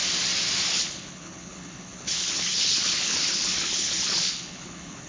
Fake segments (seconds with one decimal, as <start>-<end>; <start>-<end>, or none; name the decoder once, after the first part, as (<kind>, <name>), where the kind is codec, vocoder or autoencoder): 0.7-5.1 (codec, HILCodec)